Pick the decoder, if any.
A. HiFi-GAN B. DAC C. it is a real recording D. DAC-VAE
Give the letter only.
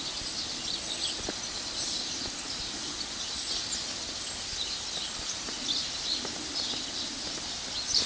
C